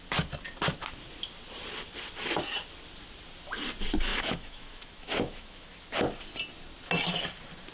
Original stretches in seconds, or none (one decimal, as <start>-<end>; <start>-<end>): 0.0-4.1; 5.9-7.7